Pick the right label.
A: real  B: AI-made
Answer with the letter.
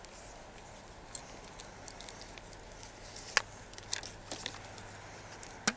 A